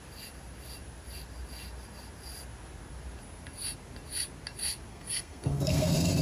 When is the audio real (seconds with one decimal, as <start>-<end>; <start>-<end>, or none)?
0.0-4.9